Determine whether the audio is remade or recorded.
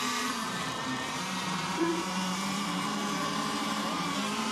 remade